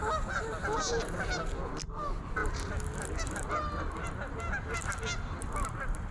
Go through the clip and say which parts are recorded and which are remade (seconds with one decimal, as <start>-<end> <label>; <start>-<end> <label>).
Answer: 0.0-6.1 recorded